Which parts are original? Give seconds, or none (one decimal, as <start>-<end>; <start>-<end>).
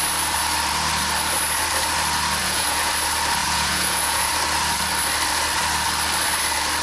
0.0-2.4; 2.9-3.4; 4.3-6.8